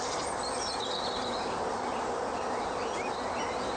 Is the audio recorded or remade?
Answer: recorded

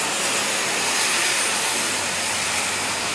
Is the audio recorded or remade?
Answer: recorded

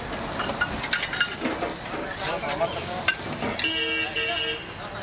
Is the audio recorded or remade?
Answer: recorded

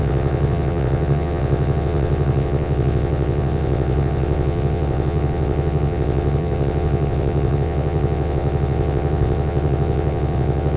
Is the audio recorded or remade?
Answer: remade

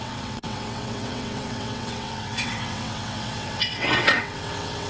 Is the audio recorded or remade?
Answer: remade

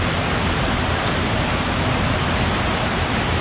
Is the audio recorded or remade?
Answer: recorded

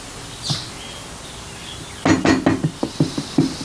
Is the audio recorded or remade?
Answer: recorded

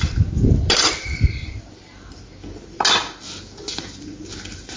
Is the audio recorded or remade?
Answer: recorded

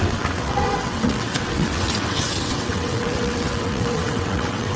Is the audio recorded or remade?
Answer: remade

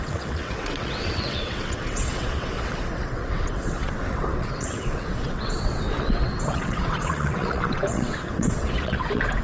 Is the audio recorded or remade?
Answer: remade